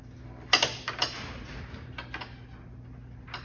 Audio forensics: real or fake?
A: real